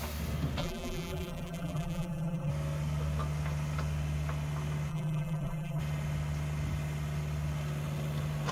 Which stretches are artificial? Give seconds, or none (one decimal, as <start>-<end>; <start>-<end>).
0.6-2.5; 4.9-5.8